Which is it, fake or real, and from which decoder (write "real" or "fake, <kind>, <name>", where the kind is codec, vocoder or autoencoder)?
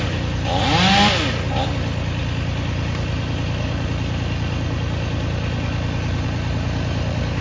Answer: real